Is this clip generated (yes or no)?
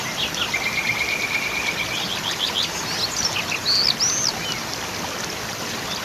no